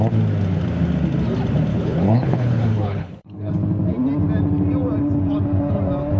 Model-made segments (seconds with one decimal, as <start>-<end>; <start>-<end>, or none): 1.7-3.5